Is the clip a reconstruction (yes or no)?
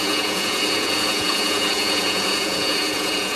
yes